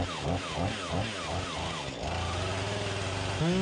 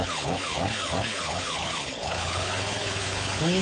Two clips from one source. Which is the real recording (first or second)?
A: first